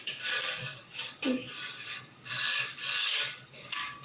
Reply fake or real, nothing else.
fake